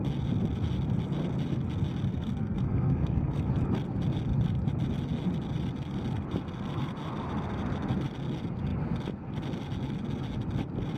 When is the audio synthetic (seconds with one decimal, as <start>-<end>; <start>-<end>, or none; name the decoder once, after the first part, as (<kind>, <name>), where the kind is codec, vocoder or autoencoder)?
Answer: 2.1-3.5 (codec, SNAC)